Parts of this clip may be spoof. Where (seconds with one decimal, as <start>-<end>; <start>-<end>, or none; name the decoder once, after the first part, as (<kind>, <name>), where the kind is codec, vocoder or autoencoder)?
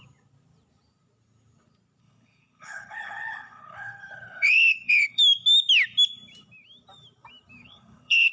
2.0-5.2 (codec, HILCodec); 7.6-8.3